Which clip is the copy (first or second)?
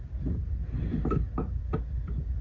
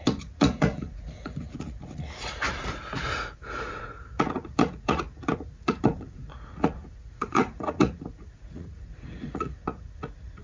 second